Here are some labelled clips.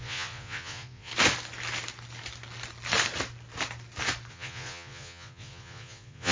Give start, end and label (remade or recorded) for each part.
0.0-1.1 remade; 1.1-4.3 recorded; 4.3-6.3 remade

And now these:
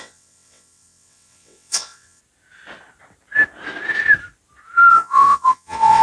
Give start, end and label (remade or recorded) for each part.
0.0-2.2 remade; 2.2-4.9 recorded; 4.9-6.0 remade

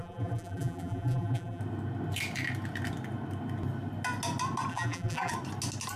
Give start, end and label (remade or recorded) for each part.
0.0-1.6 remade; 1.6-4.7 recorded; 4.7-5.3 remade; 5.3-6.0 recorded

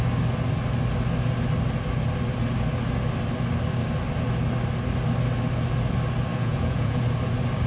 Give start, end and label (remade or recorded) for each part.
0.0-6.3 recorded; 6.3-7.0 remade; 7.0-7.7 recorded

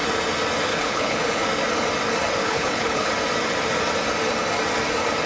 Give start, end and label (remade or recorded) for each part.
0.0-0.7 recorded; 0.7-1.2 remade; 1.2-2.4 recorded; 2.4-3.1 remade; 3.1-5.3 recorded